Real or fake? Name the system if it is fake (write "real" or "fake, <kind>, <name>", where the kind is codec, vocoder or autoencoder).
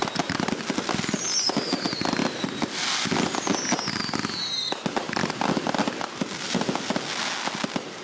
real